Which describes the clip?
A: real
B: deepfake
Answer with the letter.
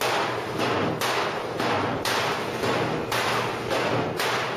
A